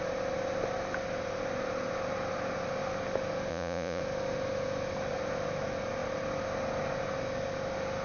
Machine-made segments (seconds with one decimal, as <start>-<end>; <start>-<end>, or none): 3.5-4.0